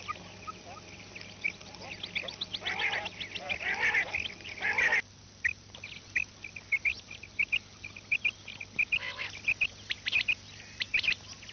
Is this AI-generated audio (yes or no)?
no